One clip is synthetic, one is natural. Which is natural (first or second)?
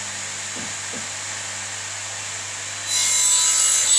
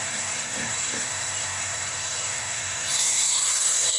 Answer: first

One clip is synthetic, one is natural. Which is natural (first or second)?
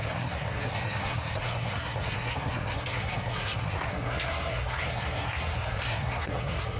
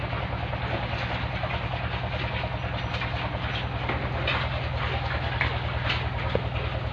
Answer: second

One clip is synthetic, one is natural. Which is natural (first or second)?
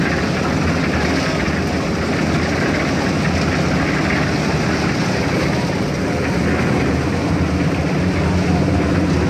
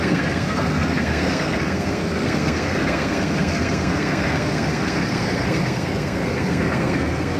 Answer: first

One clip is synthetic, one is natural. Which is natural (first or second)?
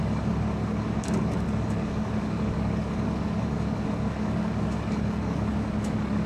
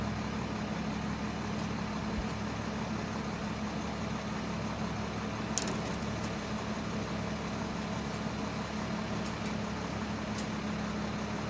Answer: second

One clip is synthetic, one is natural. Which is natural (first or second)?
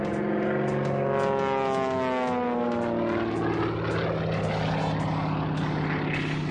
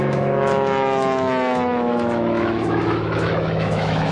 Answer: first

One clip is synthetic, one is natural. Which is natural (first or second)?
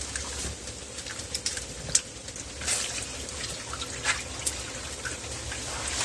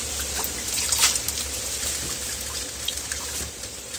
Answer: first